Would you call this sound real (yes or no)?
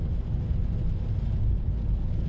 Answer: no